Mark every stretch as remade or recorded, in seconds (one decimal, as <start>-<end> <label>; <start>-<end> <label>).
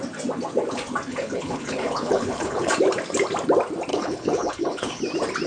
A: 0.0-1.1 recorded; 1.1-2.7 remade; 2.7-3.9 recorded; 3.9-5.0 remade; 5.0-5.5 recorded